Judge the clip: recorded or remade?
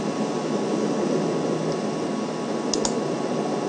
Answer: recorded